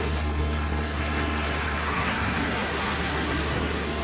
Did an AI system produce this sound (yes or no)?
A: yes